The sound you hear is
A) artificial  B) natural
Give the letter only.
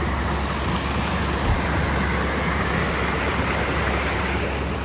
B